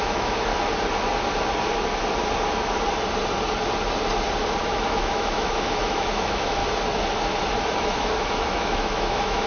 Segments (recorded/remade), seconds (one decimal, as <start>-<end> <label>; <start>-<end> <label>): 0.0-0.5 remade; 0.5-4.6 recorded; 4.6-6.6 remade; 6.6-7.6 recorded; 7.6-9.5 remade